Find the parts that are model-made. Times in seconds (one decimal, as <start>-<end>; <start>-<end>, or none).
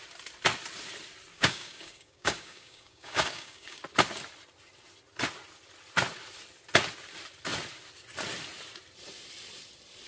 1.3-3.8